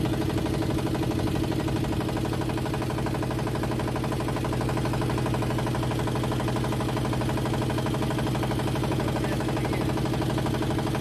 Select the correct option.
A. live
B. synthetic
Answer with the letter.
A